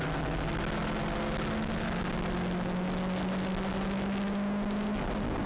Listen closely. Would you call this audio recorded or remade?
recorded